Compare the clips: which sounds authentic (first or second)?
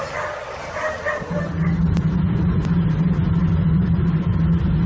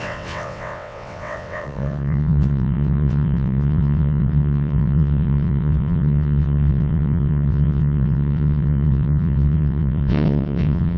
first